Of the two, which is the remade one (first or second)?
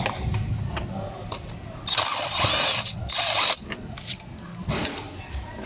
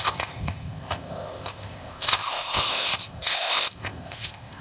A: second